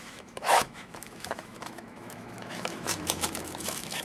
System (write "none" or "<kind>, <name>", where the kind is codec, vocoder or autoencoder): autoencoder, DAC-VAE